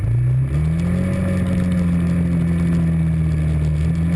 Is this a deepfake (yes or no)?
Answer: no